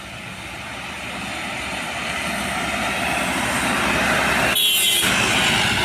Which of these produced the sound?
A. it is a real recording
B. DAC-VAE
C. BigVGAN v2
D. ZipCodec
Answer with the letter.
A